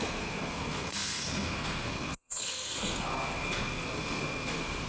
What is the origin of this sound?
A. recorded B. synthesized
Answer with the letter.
B